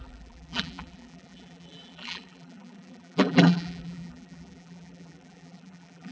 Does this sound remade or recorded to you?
remade